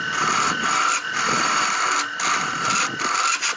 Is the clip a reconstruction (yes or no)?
no